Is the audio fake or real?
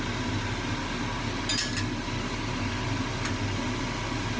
real